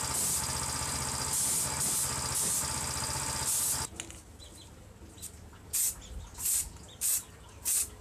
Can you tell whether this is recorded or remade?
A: recorded